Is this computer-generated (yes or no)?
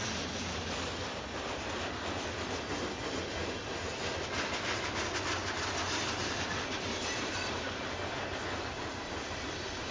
no